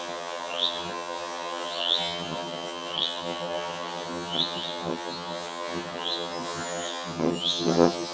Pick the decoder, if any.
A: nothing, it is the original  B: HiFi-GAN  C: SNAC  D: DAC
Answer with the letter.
B